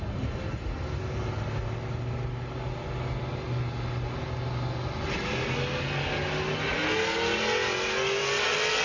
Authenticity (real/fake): real